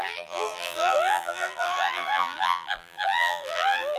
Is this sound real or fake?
fake